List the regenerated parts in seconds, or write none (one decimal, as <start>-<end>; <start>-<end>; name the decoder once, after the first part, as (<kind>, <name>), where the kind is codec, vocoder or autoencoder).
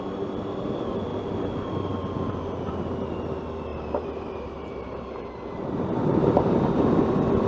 3.7-6.8 (vocoder, BigVGAN v2)